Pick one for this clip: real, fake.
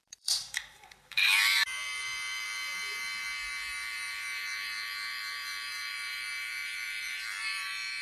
fake